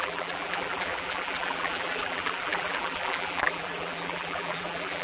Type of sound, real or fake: fake